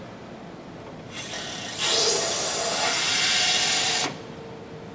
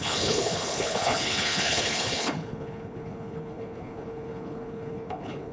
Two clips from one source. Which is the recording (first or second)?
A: first